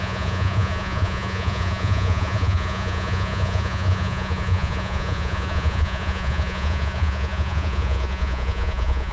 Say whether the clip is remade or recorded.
remade